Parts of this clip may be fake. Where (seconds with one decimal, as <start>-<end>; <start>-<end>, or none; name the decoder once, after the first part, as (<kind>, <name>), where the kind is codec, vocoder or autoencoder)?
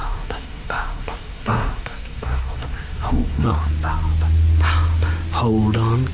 0.0-3.7 (codec, SNAC)